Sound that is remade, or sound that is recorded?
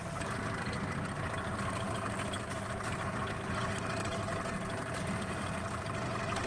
recorded